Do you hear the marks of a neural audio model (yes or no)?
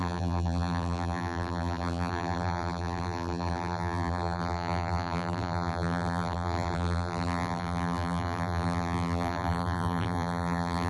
yes